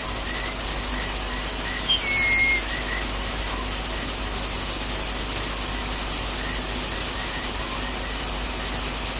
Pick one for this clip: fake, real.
real